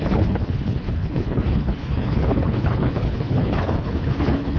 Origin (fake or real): fake